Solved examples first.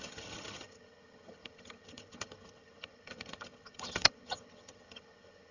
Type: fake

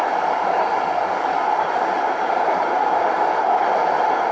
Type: real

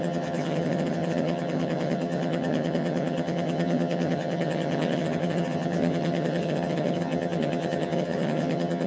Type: fake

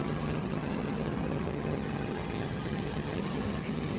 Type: fake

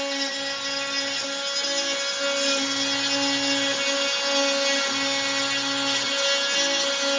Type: real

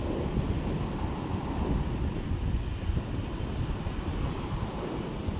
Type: real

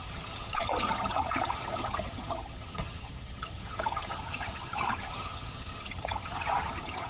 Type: fake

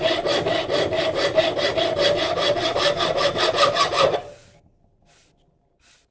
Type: real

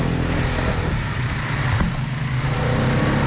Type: real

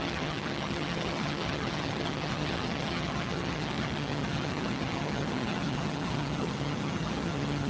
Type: fake